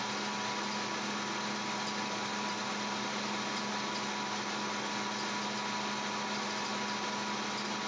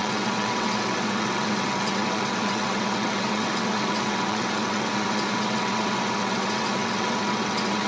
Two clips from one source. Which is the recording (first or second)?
first